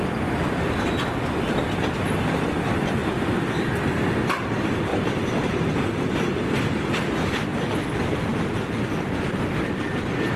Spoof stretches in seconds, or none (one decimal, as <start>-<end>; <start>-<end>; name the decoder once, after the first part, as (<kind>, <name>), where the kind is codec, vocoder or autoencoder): none

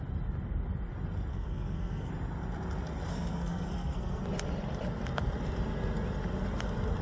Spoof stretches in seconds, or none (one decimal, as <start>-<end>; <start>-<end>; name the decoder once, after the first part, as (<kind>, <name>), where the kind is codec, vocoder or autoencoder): 1.3-2.1 (codec, SNAC); 3.1-4.2

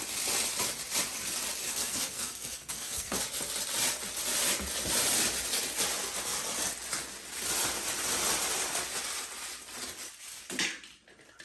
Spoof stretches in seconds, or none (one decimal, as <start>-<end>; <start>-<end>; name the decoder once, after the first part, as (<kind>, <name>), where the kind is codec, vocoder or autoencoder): 1.6-3.2 (codec, SNAC)

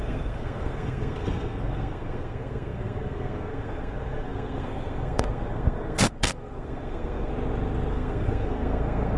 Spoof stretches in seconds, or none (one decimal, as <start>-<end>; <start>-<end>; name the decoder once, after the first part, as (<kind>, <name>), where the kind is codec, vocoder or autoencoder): 0.0-7.3 (codec, SNAC); 7.9-9.2

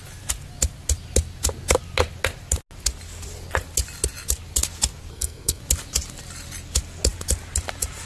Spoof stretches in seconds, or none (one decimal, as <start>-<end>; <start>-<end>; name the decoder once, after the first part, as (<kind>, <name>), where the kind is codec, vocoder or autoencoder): 5.1-5.6 (codec, SNAC)

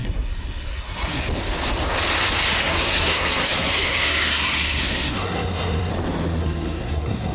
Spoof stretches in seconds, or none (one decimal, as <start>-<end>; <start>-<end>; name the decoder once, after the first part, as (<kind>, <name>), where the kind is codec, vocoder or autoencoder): 0.0-1.2 (codec, SNAC); 2.6-5.9; 6.4-7.3

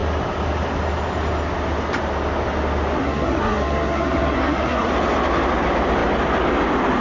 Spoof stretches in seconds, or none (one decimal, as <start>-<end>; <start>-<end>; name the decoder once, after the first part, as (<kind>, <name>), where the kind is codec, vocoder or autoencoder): 3.0-4.9 (codec, SNAC)